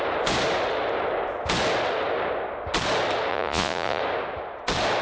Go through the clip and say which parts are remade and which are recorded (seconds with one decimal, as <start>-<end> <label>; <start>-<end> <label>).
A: 0.0-3.3 recorded; 3.3-4.0 remade; 4.0-5.0 recorded